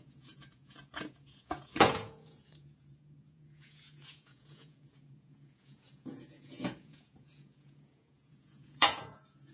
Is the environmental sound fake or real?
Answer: fake